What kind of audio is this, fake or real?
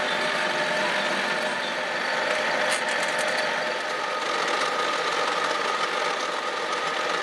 real